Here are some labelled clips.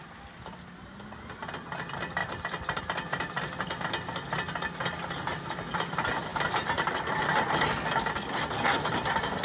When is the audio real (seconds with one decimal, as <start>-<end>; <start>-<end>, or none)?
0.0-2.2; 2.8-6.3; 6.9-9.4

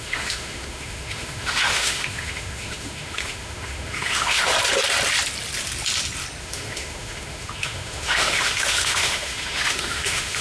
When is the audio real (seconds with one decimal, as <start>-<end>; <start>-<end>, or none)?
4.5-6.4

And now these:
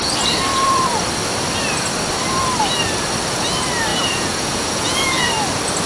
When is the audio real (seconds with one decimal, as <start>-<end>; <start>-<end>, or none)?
0.0-3.9; 5.3-5.9